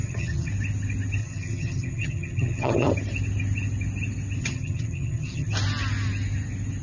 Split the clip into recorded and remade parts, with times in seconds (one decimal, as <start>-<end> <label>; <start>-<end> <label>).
0.0-0.5 remade; 0.5-1.2 recorded; 1.2-2.9 remade; 2.9-4.4 recorded; 4.4-5.5 remade; 5.5-6.8 recorded